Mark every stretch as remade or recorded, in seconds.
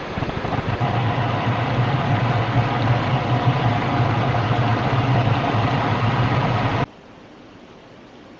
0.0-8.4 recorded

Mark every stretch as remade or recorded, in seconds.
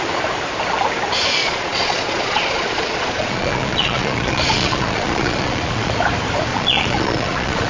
0.0-1.4 recorded; 1.4-5.9 remade; 5.9-6.5 recorded; 6.5-7.7 remade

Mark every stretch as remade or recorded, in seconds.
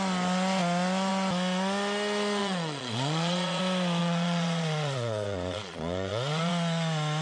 0.0-2.4 recorded; 2.4-3.6 remade; 3.6-4.0 recorded; 4.0-6.5 remade; 6.5-7.2 recorded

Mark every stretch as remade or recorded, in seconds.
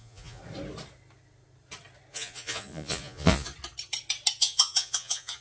0.0-0.4 remade; 0.4-2.1 recorded; 2.1-3.5 remade; 3.5-4.4 recorded; 4.4-5.4 remade